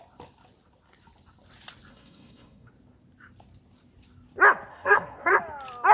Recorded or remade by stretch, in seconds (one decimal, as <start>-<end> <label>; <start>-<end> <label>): 0.0-1.9 recorded; 1.9-2.7 remade; 2.7-4.7 recorded; 4.7-5.4 remade; 5.4-5.9 recorded